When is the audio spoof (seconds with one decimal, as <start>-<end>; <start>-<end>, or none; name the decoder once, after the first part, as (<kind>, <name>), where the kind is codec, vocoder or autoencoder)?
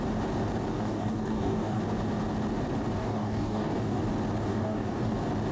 0.7-1.8 (codec, DAC); 3.0-4.0; 4.5-5.1